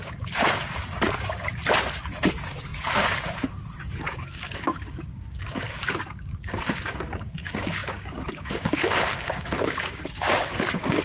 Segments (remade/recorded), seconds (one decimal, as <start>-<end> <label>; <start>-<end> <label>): 0.0-1.6 remade; 1.6-2.3 recorded; 2.3-11.0 remade